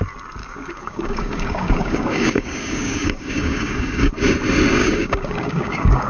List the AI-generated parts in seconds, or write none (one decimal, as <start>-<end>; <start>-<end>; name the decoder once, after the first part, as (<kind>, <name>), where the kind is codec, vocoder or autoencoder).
0.4-4.1 (codec, DAC); 4.8-6.1